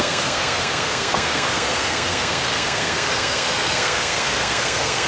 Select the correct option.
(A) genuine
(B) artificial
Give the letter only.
B